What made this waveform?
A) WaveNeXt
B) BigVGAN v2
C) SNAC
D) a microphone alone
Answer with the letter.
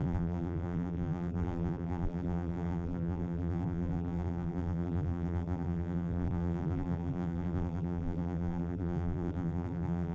B